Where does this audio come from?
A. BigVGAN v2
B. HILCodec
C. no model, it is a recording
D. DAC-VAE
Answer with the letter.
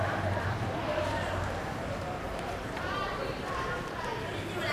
A